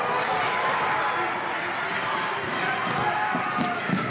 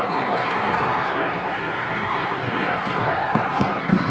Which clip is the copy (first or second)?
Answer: second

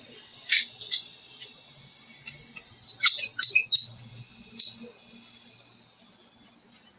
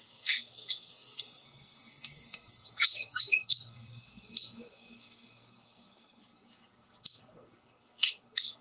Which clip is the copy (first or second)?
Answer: second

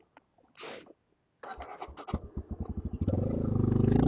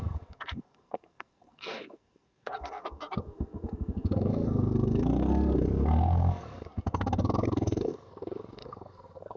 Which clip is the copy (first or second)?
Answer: second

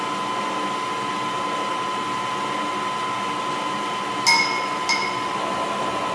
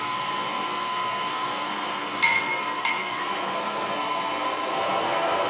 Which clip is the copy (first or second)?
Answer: second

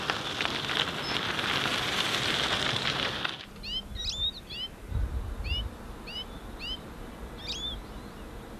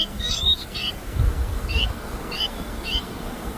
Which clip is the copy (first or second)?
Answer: second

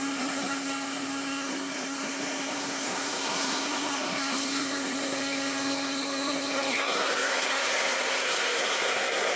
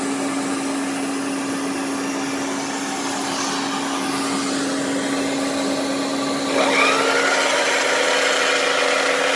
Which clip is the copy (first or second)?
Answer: first